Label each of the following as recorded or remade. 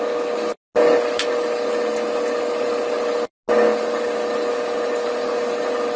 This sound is recorded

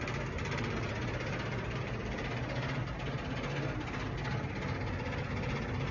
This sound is recorded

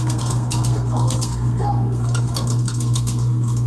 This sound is remade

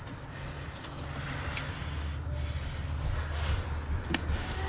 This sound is recorded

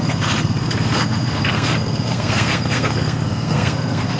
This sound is remade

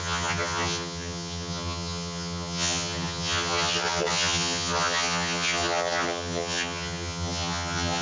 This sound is remade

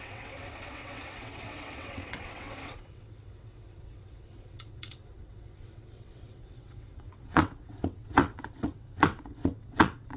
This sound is remade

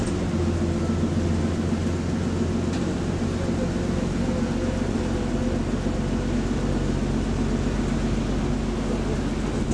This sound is recorded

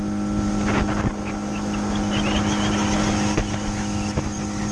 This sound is recorded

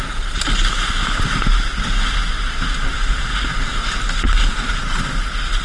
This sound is recorded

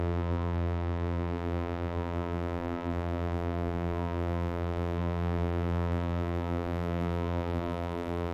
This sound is remade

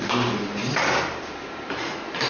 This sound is remade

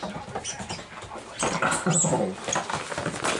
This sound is recorded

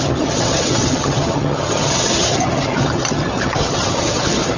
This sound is remade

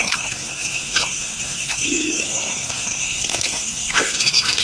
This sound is remade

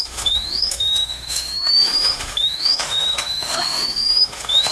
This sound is remade